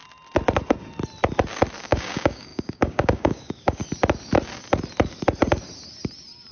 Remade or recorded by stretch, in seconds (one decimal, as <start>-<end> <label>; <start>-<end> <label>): 0.0-1.8 recorded; 1.8-3.8 remade; 3.8-6.5 recorded